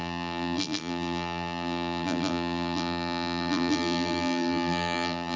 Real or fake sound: fake